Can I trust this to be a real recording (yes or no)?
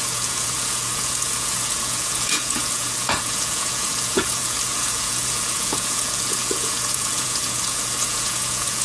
no